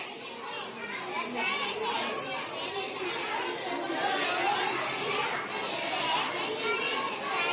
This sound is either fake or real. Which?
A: real